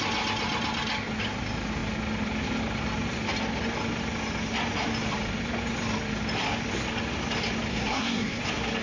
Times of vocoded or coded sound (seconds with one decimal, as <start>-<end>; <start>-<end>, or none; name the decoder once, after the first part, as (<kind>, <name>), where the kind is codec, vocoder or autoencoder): 7.7-8.4 (codec, SNAC)